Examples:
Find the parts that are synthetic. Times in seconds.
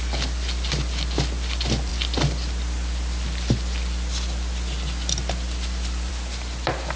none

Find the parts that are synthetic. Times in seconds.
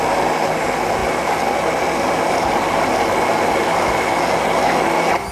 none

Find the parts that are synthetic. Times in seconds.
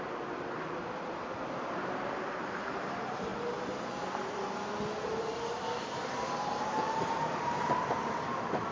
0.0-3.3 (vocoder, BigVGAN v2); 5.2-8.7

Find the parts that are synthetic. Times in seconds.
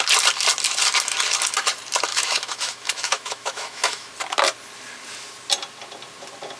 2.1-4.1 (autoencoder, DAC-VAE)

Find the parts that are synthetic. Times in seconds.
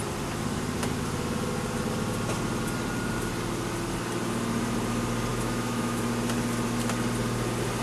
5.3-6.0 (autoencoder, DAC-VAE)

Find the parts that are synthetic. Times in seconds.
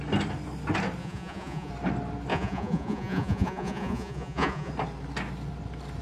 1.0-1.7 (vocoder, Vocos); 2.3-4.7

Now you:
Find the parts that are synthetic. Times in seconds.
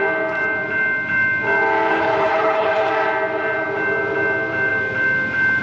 1.9-2.9 (codec, HILCodec)